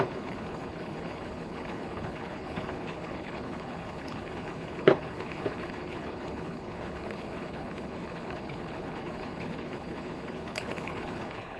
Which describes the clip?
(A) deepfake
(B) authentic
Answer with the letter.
A